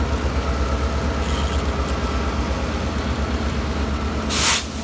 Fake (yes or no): no